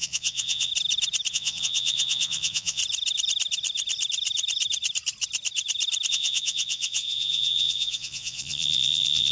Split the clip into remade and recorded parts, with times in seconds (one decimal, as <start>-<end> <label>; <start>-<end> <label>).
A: 0.0-0.7 remade; 0.7-1.3 recorded; 1.3-2.8 remade; 2.8-6.1 recorded; 6.1-9.3 remade